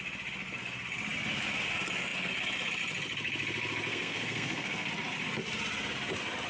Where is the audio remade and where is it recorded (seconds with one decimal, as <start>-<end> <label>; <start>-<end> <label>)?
0.0-3.9 recorded; 3.9-4.9 remade; 4.9-6.5 recorded